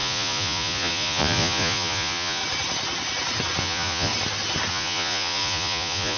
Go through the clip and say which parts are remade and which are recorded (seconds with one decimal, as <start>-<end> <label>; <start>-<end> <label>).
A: 0.0-2.4 remade; 2.4-3.6 recorded; 3.6-4.1 remade; 4.1-4.7 recorded; 4.7-6.2 remade